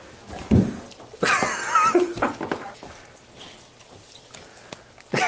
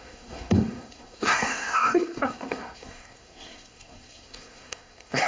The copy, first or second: second